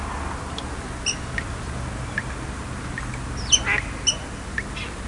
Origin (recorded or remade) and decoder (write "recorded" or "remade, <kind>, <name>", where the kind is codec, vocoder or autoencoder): recorded